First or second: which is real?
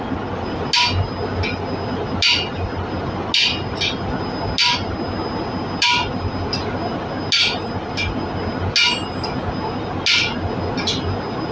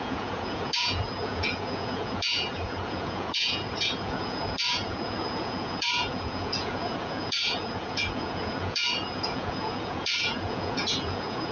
first